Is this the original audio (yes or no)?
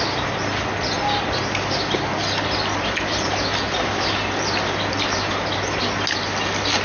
yes